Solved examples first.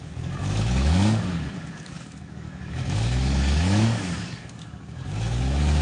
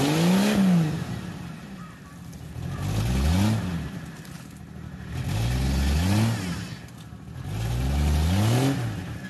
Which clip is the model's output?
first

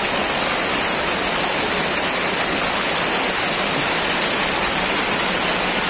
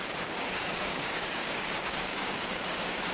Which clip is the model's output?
second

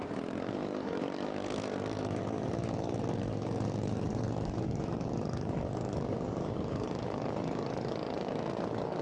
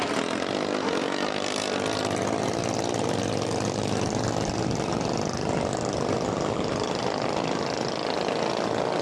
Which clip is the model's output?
first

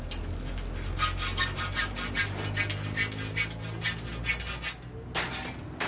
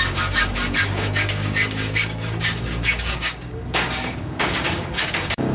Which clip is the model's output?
second